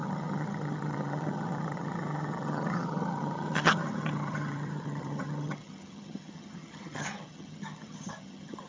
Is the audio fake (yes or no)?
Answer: yes